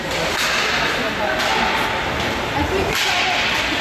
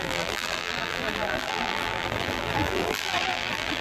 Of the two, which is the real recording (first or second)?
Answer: first